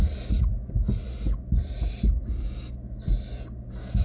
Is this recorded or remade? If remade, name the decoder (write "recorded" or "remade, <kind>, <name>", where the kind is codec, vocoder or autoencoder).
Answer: recorded